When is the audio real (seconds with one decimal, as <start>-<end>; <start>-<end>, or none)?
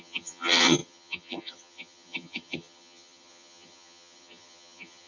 none